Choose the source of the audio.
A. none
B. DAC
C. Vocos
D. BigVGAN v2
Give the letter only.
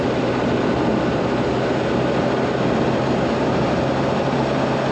A